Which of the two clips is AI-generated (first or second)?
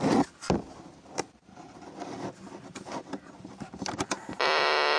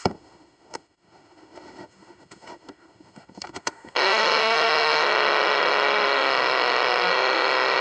second